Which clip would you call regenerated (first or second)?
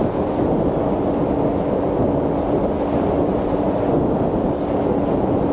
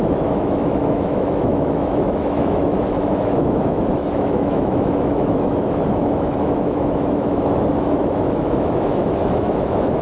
second